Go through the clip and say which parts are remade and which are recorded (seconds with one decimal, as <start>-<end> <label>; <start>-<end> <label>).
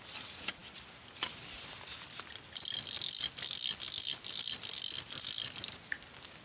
0.0-6.4 recorded